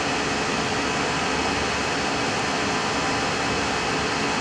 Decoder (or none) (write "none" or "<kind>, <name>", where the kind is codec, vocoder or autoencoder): none